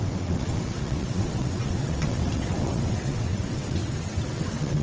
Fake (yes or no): yes